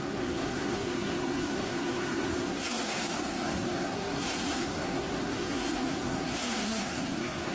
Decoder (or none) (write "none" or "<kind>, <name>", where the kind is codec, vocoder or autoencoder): codec, SNAC